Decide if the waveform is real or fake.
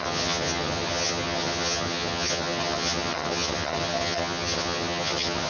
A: fake